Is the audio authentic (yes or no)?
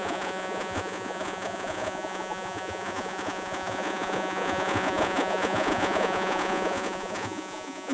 no